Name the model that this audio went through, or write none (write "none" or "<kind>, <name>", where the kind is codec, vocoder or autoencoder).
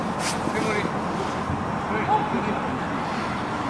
none